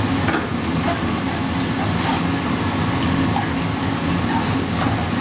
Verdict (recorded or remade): recorded